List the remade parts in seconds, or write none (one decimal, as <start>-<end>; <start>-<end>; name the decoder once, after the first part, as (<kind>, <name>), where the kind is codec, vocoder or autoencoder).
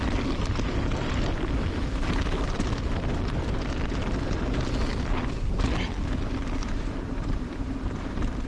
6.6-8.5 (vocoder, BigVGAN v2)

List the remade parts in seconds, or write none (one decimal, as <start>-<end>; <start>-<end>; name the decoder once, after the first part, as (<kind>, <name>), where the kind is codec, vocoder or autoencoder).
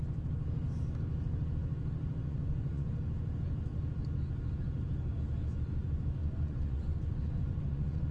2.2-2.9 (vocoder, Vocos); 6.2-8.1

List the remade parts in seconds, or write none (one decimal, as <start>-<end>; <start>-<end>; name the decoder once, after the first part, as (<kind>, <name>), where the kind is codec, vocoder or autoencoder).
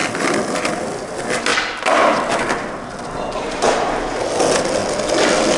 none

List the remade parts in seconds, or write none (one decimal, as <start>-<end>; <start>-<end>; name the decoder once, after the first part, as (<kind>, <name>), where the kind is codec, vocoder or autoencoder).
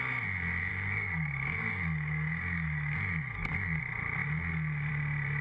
0.7-3.8 (codec, DAC)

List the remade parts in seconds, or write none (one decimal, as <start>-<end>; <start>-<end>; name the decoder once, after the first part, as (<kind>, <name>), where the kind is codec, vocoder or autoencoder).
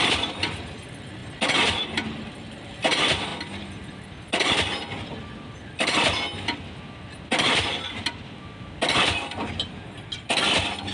none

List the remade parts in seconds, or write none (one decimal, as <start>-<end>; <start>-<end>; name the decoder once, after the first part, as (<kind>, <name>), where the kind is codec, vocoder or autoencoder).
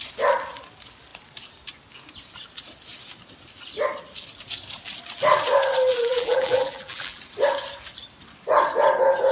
5.9-7.2 (vocoder, BigVGAN v2)